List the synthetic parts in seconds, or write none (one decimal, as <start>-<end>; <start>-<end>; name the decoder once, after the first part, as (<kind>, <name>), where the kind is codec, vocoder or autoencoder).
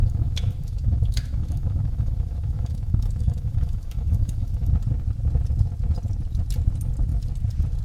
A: 0.0-4.7 (autoencoder, DAC-VAE)